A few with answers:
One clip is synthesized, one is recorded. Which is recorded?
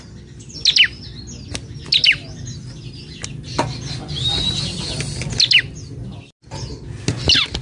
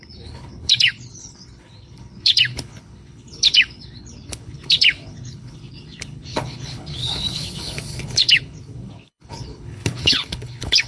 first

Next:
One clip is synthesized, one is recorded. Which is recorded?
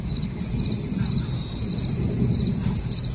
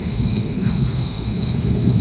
first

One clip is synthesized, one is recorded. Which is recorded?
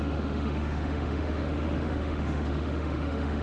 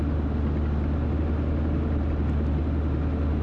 second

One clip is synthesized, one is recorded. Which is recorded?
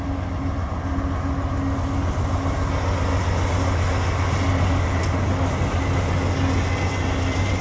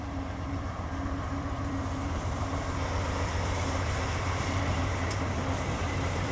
first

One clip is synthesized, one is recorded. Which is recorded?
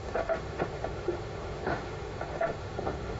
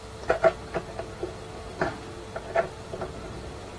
second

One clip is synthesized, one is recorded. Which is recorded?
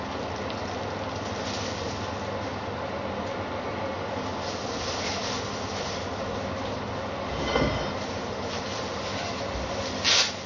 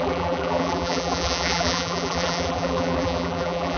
first